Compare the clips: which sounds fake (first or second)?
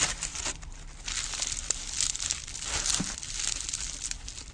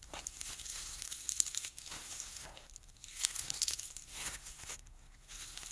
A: second